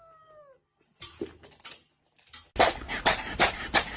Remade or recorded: recorded